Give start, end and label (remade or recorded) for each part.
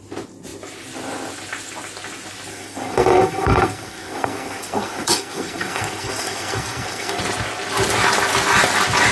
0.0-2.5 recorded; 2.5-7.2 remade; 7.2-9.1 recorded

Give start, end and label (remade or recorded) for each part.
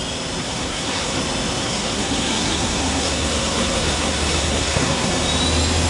0.0-0.4 recorded; 0.4-1.2 remade; 1.2-1.6 recorded; 1.6-5.1 remade; 5.1-5.9 recorded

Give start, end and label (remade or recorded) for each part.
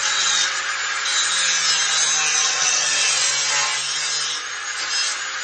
0.0-0.6 remade; 0.6-2.3 recorded; 2.3-3.3 remade; 3.3-5.4 recorded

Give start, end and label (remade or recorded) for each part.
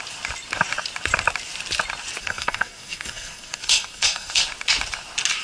0.0-2.2 recorded; 2.2-4.4 remade; 4.4-5.4 recorded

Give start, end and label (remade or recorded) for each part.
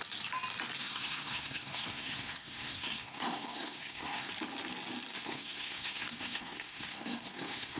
0.0-0.8 recorded; 0.8-4.3 remade; 4.3-5.1 recorded; 5.1-7.8 remade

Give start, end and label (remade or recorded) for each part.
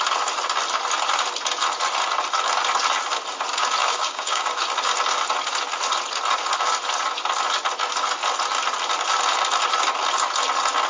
0.0-3.8 recorded; 3.8-4.6 remade; 4.6-10.9 recorded